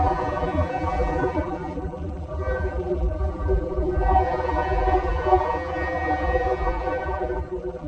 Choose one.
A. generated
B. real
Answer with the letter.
A